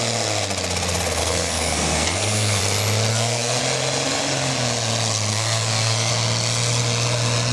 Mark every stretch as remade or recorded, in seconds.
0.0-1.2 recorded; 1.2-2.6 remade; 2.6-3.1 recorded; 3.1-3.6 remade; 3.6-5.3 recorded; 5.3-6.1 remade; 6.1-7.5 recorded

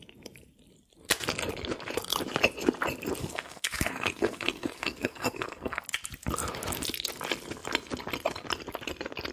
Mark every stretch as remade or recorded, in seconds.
0.0-3.2 recorded; 3.2-5.8 remade; 5.8-9.3 recorded

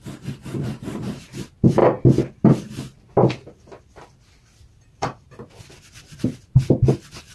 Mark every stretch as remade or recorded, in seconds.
0.0-7.3 recorded

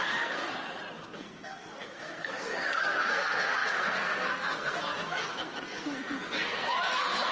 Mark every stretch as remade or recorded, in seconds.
0.0-0.4 remade; 0.4-1.0 recorded; 1.0-7.3 remade

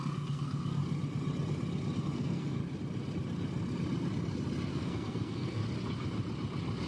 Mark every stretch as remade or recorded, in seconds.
0.0-0.8 remade; 0.8-2.0 recorded; 2.0-2.6 remade; 2.6-4.7 recorded; 4.7-5.6 remade; 5.6-6.9 recorded

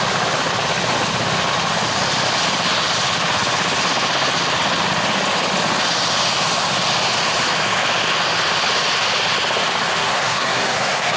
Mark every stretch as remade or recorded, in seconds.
0.0-10.0 recorded; 10.0-11.2 remade

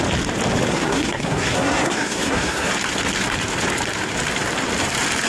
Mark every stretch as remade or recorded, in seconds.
0.0-0.7 recorded; 0.7-2.7 remade; 2.7-5.3 recorded

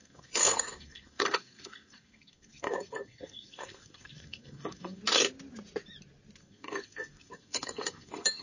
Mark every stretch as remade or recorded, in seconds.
0.0-5.0 remade; 5.0-6.4 recorded; 6.4-8.4 remade